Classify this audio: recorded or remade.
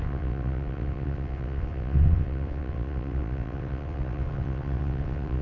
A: remade